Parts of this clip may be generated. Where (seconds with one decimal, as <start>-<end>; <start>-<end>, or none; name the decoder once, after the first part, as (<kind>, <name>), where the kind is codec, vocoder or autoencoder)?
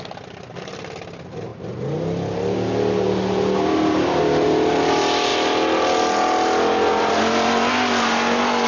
none